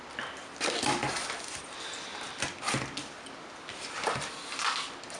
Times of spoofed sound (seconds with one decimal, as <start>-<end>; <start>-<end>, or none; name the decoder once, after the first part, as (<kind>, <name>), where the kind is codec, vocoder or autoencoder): none